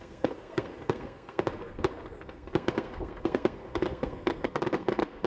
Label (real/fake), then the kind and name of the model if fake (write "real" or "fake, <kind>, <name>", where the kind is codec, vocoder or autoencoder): fake, codec, SNAC